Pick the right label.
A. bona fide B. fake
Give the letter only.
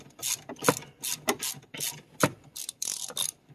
A